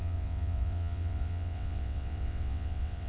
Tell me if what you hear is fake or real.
fake